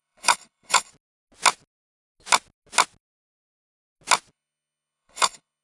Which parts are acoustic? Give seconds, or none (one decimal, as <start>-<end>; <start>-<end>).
0.9-4.3